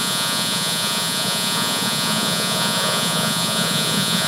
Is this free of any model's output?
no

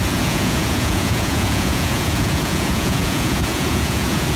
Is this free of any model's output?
no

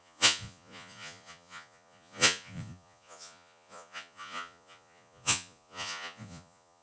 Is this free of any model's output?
no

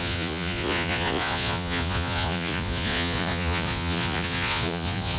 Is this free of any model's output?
no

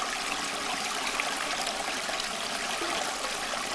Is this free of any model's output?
yes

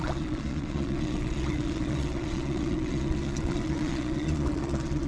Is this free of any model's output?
no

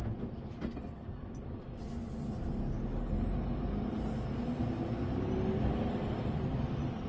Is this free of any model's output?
yes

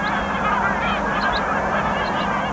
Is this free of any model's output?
yes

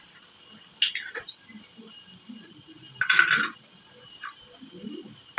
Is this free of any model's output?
yes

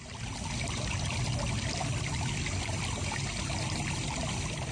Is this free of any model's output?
yes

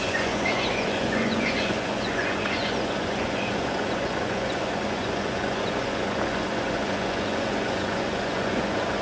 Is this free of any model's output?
no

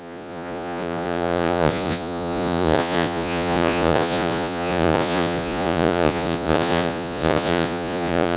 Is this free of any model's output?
no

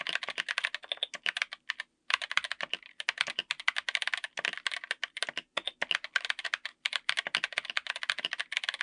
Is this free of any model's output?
yes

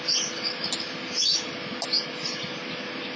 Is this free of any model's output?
yes